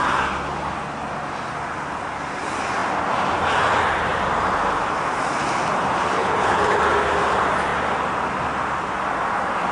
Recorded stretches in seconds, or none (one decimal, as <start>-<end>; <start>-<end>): 0.0-6.2; 6.8-9.7